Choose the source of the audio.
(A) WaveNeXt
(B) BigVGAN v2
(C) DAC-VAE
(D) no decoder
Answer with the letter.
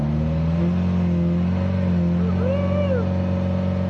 D